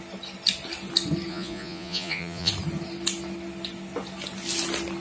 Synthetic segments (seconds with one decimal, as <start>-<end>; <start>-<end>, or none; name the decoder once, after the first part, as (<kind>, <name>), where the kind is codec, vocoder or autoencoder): 1.3-2.5 (vocoder, Vocos)